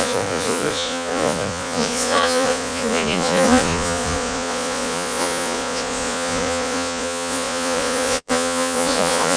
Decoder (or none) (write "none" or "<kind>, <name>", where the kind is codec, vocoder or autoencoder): vocoder, Vocos